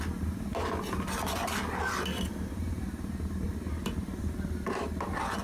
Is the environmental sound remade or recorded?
remade